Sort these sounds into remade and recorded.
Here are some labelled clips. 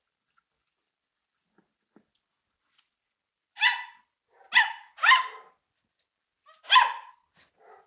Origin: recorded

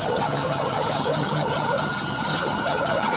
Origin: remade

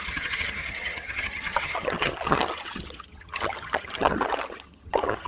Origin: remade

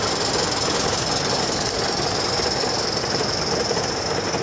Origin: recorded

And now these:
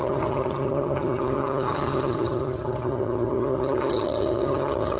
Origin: remade